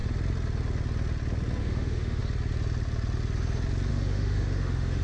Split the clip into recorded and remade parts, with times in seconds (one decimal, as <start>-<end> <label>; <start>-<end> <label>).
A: 0.0-1.6 recorded; 1.6-2.2 remade; 2.2-3.9 recorded; 3.9-5.0 remade